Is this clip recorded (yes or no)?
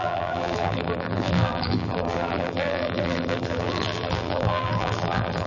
no